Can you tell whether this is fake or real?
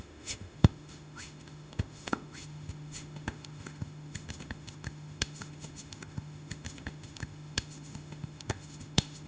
fake